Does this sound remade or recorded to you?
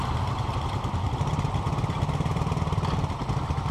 recorded